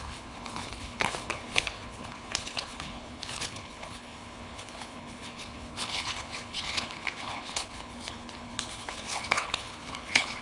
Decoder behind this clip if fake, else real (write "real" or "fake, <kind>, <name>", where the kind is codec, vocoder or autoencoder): fake, codec, HILCodec